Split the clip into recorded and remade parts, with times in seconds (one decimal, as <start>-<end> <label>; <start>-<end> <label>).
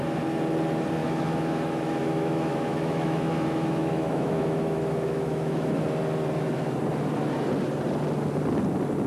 0.0-1.0 recorded; 1.0-5.8 remade; 5.8-9.1 recorded